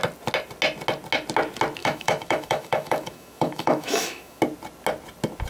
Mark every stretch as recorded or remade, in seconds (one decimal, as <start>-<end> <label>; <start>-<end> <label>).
0.0-1.8 recorded; 1.8-4.4 remade; 4.4-5.5 recorded